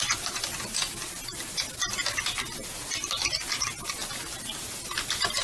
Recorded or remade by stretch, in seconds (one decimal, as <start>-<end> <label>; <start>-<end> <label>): 0.0-5.4 recorded